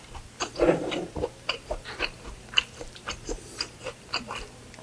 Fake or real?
fake